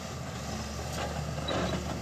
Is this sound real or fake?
real